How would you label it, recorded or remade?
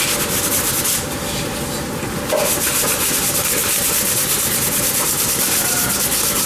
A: recorded